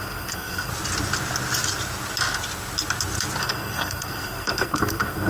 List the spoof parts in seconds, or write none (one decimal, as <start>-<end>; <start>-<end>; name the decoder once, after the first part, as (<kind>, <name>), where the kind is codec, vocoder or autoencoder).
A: 0.0-0.7 (codec, SNAC); 3.4-5.3